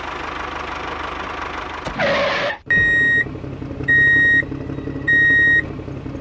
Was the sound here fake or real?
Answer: real